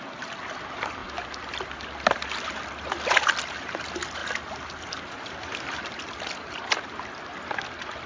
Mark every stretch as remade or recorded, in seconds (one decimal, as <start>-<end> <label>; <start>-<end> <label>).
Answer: 0.0-8.1 recorded